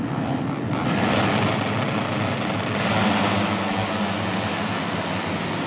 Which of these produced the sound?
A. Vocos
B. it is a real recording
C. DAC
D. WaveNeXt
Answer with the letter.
B